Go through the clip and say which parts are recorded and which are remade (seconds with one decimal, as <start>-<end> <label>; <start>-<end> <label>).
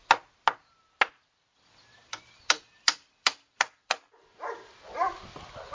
0.0-1.5 recorded; 1.5-5.7 remade